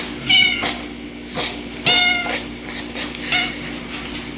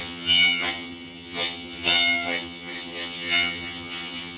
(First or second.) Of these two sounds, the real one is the first